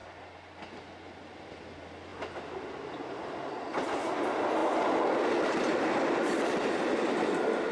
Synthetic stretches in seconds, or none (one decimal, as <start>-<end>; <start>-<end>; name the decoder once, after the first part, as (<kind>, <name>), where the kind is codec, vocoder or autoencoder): none